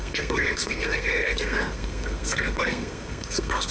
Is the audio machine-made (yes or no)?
yes